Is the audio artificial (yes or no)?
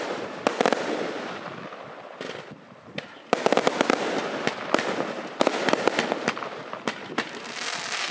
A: no